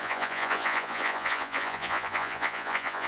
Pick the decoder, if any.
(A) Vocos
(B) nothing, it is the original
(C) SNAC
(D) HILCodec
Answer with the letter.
A